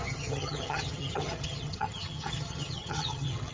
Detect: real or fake fake